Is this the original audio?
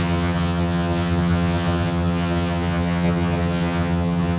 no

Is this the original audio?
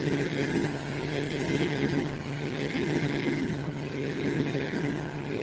no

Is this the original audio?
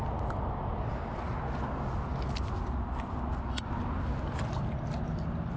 yes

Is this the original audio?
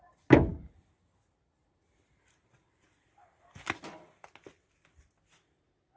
yes